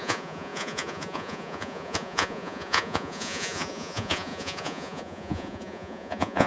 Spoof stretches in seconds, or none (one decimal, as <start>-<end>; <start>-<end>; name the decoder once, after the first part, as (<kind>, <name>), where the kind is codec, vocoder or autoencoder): 0.0-6.5 (vocoder, Vocos)